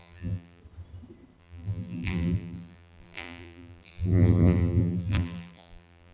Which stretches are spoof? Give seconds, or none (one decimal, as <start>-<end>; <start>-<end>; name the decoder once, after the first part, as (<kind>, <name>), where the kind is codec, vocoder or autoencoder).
0.0-0.6 (vocoder, BigVGAN v2); 1.4-6.1